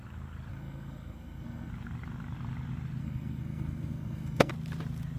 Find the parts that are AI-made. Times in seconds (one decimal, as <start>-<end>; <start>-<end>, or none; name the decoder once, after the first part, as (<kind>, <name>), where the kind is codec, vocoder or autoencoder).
0.5-1.7 (codec, SNAC); 3.0-4.5